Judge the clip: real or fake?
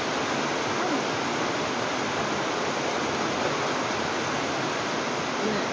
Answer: real